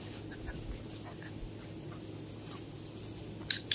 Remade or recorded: recorded